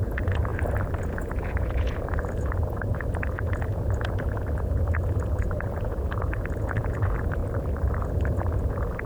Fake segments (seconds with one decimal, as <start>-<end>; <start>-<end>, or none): 0.0-0.5; 1.0-7.4; 8.0-9.1

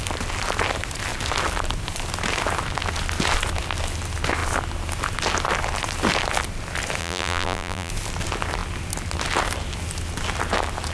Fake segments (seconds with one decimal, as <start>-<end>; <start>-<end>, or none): 7.0-7.9

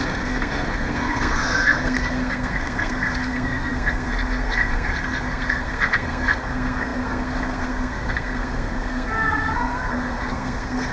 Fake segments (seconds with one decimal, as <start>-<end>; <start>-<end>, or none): 0.0-10.9

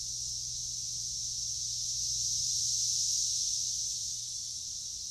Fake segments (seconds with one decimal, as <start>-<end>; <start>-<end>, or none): 3.4-4.5

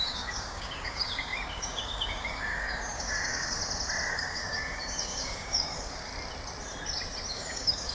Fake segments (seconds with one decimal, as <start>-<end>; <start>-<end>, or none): 0.0-3.6; 4.1-6.1; 7.3-7.9

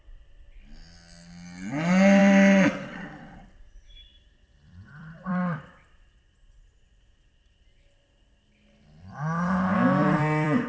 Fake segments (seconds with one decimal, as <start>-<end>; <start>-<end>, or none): 2.2-3.4; 4.1-7.6; 10.0-10.7